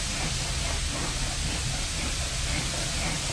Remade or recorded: recorded